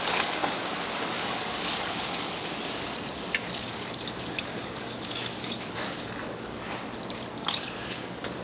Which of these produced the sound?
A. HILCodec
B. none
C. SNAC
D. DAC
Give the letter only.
D